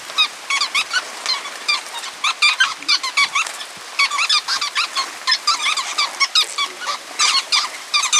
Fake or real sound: real